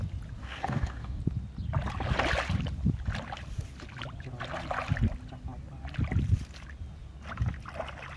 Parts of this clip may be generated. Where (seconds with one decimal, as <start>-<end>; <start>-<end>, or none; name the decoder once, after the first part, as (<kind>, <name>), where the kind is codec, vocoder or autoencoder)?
0.4-1.2 (codec, DAC)